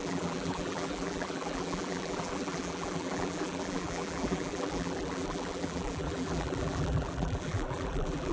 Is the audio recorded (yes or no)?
no